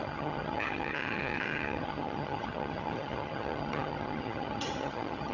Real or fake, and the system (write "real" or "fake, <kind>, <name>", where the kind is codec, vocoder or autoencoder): fake, vocoder, HiFi-GAN